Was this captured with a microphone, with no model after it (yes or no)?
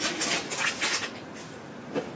yes